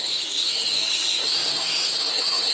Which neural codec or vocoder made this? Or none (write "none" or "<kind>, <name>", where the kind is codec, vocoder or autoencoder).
codec, SNAC